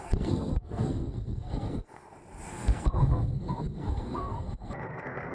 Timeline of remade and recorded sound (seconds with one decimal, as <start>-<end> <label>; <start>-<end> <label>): 0.0-2.0 remade; 2.0-2.5 recorded; 2.5-5.3 remade